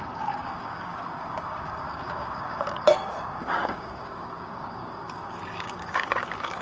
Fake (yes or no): yes